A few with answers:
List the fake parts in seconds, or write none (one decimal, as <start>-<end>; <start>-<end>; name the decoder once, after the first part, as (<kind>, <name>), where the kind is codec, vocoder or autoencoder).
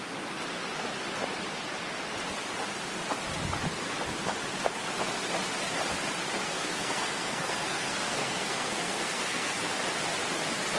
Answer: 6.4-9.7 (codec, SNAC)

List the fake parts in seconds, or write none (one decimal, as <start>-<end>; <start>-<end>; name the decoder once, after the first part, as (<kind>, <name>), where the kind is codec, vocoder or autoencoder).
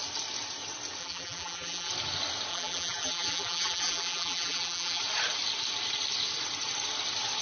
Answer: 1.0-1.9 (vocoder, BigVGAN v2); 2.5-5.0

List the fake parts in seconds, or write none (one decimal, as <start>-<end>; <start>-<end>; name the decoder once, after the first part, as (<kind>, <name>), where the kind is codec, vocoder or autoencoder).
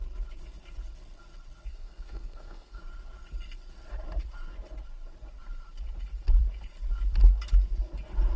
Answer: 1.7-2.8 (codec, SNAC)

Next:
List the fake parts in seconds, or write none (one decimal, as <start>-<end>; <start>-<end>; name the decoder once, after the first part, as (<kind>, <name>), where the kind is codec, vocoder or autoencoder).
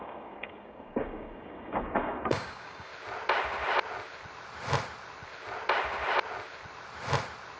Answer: 0.0-2.9 (codec, DAC)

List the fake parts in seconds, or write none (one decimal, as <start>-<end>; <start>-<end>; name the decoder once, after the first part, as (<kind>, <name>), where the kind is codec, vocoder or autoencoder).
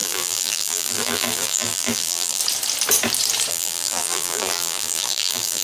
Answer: 0.0-2.4 (vocoder, BigVGAN v2); 3.5-5.6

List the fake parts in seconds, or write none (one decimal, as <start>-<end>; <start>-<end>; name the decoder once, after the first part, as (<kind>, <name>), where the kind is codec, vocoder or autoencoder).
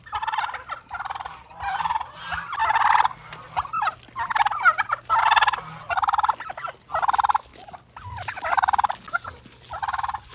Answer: 5.8-6.5 (vocoder, BigVGAN v2)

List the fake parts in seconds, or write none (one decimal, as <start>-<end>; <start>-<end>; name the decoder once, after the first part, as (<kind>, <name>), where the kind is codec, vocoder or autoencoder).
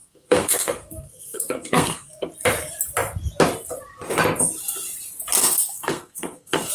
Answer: 0.0-2.3 (codec, SNAC); 5.4-6.7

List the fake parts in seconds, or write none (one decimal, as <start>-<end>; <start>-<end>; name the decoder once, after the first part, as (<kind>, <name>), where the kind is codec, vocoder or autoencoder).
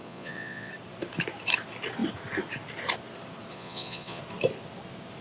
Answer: 0.0-0.7 (vocoder, Vocos); 3.5-4.2